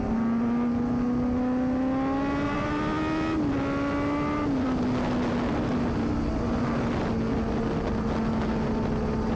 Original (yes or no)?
yes